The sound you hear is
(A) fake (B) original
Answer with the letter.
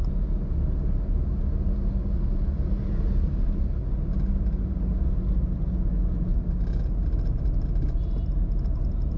B